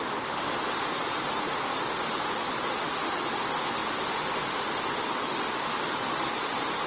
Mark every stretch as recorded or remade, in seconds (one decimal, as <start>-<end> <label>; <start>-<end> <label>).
0.0-6.9 recorded